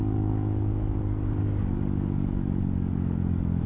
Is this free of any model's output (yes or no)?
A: no